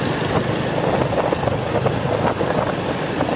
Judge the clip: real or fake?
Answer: real